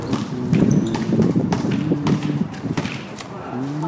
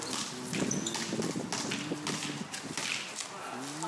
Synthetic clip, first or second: first